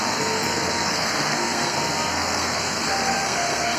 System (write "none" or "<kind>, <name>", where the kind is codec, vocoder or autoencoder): codec, SNAC